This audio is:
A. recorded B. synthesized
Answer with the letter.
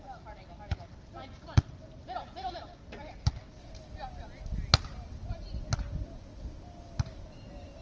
A